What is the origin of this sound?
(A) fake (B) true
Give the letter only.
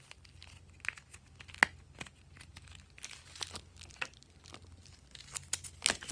B